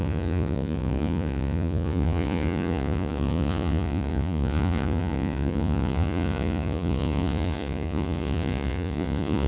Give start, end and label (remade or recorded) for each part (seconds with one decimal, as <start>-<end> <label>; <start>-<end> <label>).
0.0-9.5 remade